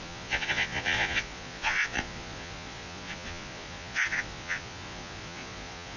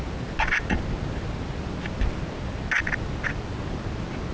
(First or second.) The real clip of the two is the second